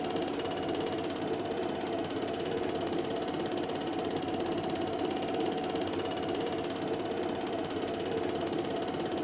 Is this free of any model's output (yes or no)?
no